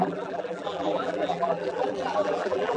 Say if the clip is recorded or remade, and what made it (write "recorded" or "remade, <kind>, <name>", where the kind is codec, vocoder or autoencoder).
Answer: remade, vocoder, BigVGAN v2